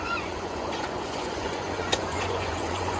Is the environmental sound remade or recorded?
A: remade